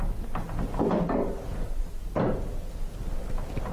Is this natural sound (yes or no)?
yes